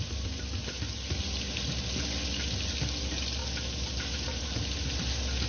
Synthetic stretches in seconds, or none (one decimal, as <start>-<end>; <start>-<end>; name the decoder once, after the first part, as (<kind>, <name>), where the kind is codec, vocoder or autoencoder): none